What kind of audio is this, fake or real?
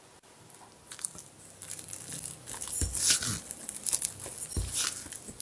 real